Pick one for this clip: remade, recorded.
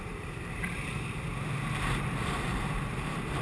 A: remade